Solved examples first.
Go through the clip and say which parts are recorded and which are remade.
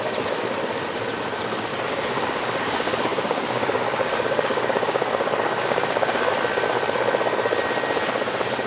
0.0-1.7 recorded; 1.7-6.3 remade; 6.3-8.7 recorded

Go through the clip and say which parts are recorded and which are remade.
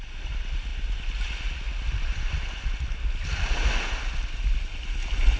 0.0-5.4 recorded